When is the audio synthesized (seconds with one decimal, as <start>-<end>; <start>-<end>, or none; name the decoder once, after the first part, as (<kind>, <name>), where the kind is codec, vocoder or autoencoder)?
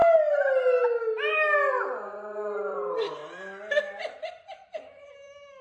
1.7-3.2 (vocoder, BigVGAN v2); 3.8-5.6